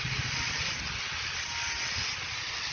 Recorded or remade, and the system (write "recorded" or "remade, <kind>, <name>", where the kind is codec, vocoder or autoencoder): recorded